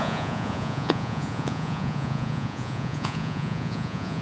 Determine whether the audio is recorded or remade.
remade